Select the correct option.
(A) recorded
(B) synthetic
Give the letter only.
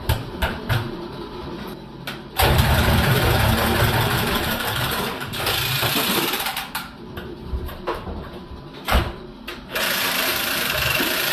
B